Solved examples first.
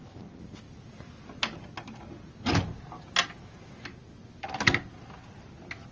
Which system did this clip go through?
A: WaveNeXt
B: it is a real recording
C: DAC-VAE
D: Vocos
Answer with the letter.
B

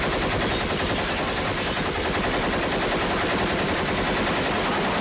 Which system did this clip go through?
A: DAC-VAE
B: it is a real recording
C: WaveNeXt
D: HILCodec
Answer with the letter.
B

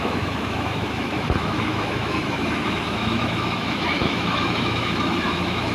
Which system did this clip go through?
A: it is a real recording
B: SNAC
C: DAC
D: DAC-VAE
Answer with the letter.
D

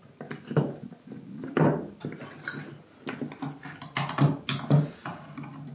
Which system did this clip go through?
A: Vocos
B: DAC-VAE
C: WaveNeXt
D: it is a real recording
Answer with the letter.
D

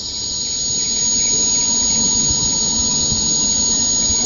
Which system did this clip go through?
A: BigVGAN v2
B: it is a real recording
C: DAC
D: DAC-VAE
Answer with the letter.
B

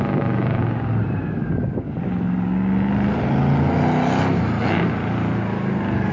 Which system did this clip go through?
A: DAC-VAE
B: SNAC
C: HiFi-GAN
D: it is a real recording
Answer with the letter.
D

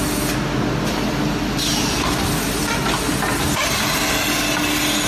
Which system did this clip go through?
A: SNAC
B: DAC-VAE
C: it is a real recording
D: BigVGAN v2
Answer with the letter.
C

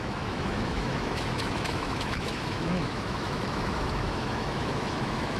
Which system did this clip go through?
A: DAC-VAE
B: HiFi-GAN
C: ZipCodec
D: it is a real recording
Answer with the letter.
A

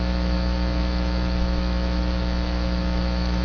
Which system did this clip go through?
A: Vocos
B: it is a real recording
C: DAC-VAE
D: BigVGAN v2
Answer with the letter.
C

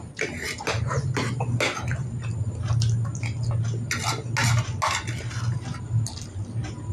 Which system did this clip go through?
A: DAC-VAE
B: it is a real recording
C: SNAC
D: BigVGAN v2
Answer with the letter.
B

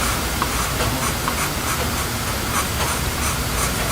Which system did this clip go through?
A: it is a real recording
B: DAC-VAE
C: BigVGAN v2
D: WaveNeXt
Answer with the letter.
A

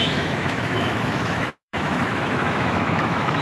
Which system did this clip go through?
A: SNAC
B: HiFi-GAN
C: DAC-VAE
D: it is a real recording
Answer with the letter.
C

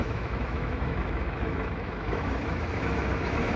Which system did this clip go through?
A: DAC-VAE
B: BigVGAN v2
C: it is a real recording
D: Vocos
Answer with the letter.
A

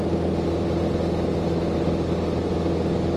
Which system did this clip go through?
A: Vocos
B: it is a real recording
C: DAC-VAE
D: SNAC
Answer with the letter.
B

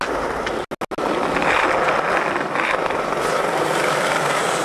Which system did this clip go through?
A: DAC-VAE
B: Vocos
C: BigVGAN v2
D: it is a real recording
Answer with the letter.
D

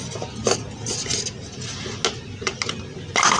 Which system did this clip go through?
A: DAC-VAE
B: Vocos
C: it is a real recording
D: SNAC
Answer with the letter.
C